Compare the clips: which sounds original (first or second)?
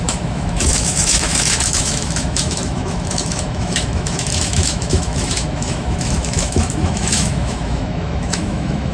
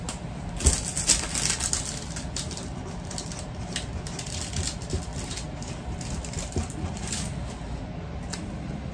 second